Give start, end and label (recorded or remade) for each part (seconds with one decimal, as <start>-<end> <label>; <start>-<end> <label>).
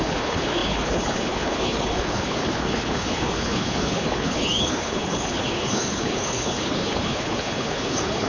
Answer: 0.0-8.3 remade